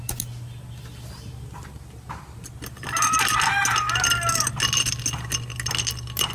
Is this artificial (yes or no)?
no